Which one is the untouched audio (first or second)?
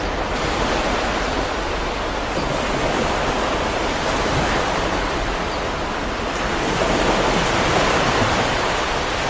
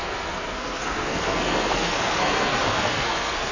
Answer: first